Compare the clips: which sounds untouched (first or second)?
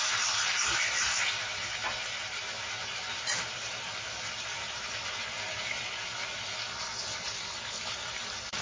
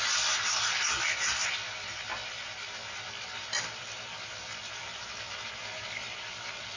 second